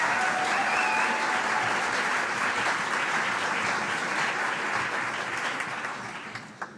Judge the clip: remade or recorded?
recorded